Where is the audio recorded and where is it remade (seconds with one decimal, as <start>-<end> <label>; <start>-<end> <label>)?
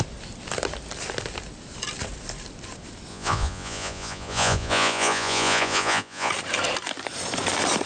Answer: 0.0-3.1 recorded; 3.1-6.3 remade; 6.3-7.9 recorded